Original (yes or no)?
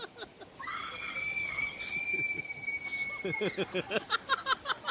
yes